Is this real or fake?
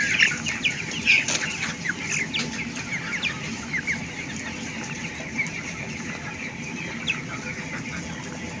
real